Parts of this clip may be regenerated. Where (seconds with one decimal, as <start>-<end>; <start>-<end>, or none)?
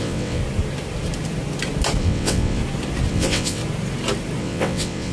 0.0-0.4; 2.0-2.6; 3.1-3.6; 4.4-5.1